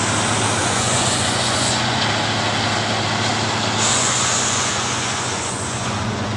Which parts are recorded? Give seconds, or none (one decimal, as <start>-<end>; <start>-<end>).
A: 0.0-0.6; 2.0-3.9